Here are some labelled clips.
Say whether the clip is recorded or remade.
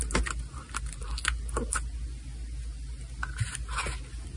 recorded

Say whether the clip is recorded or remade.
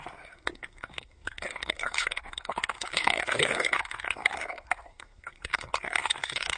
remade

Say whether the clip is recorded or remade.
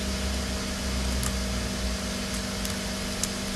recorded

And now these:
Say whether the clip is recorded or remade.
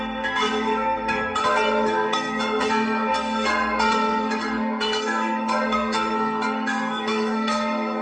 remade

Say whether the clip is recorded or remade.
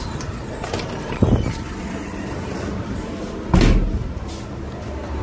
recorded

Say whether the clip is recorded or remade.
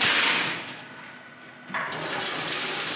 recorded